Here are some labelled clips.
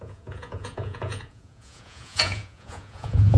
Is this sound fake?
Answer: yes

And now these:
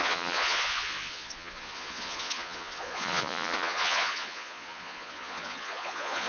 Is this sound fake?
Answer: yes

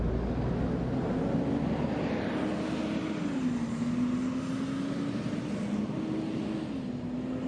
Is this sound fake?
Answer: no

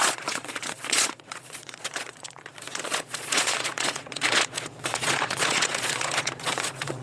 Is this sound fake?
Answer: yes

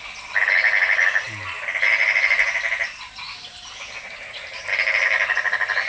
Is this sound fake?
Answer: no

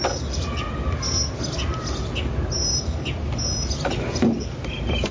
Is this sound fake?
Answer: no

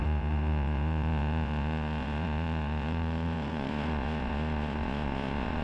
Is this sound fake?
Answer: yes